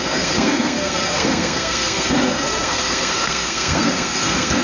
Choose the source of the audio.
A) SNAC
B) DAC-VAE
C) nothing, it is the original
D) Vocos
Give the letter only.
A